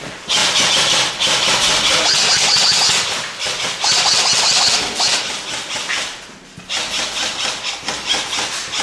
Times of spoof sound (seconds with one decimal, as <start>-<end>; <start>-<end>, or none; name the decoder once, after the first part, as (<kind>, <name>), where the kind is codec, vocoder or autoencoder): none